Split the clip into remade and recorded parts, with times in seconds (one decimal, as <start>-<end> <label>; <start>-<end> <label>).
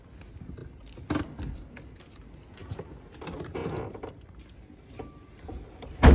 0.0-2.6 recorded; 2.6-3.2 remade; 3.2-3.6 recorded; 3.6-4.1 remade; 4.1-6.1 recorded